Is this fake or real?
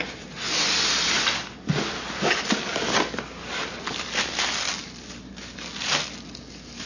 real